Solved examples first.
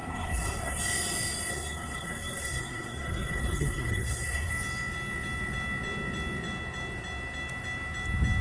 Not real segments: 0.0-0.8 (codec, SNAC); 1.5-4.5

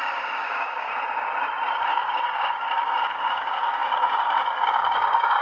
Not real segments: 0.0-0.9 (codec, DAC); 1.7-5.4

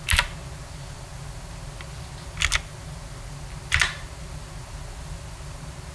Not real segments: none

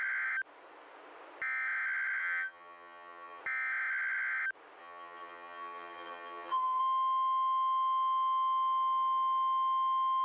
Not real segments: 2.2-3.4 (vocoder, HiFi-GAN); 4.8-6.8

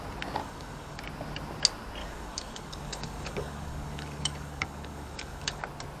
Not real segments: 0.4-1.0 (codec, DAC); 2.0-5.6

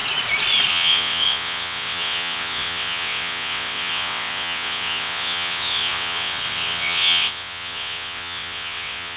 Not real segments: 0.7-9.2 (vocoder, WaveNeXt)

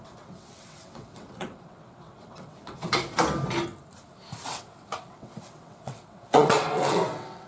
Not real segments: 0.0-3.0 (vocoder, WaveNeXt); 4.4-7.5